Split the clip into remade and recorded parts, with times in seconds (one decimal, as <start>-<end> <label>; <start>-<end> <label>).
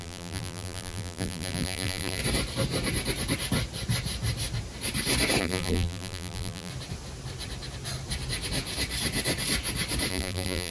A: 0.0-2.2 remade; 2.2-5.4 recorded; 5.4-6.7 remade; 6.7-10.1 recorded; 10.1-10.7 remade